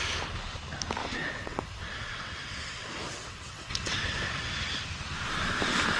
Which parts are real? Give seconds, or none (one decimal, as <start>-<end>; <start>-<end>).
0.0-1.0; 4.5-6.0